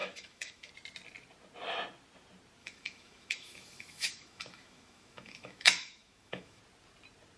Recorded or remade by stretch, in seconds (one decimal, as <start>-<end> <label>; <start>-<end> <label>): 0.0-0.7 remade; 0.7-2.6 recorded; 2.6-6.6 remade; 6.6-7.4 recorded

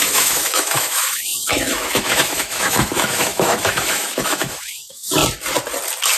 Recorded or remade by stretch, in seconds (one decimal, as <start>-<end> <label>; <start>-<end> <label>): 0.0-5.2 remade; 5.2-6.2 recorded

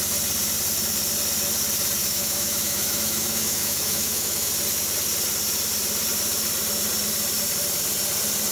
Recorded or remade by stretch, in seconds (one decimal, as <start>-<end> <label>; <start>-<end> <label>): 0.0-2.0 recorded; 2.0-4.5 remade; 4.5-8.5 recorded

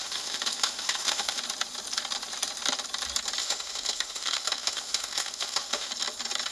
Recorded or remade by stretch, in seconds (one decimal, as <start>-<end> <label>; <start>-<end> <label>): 0.0-1.4 remade; 1.4-3.4 recorded; 3.4-5.9 remade; 5.9-6.5 recorded

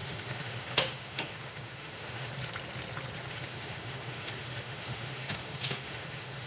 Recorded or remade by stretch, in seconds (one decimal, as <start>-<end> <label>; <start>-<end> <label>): 0.0-2.3 remade; 2.3-3.3 recorded; 3.3-6.5 remade

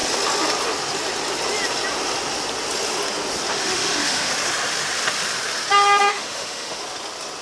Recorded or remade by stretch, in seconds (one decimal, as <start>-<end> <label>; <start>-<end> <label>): 0.0-3.5 recorded; 3.5-4.3 remade; 4.3-6.1 recorded; 6.1-6.8 remade; 6.8-7.4 recorded

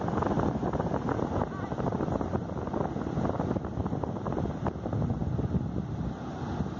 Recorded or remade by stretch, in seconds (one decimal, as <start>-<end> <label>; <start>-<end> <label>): 0.0-6.8 recorded

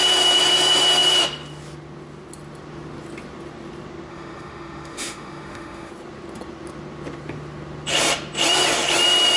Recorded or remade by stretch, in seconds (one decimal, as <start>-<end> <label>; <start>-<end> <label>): 0.0-4.1 recorded; 4.1-5.9 remade; 5.9-9.4 recorded